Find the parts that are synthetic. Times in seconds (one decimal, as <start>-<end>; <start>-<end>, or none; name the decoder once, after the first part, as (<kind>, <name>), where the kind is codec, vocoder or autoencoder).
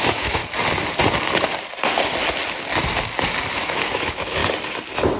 0.0-0.4 (autoencoder, DAC-VAE); 3.5-4.4